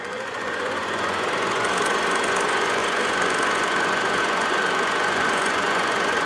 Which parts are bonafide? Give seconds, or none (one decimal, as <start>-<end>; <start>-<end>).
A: none